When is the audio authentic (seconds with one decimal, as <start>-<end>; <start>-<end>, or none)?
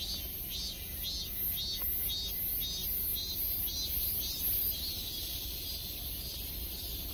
0.0-2.8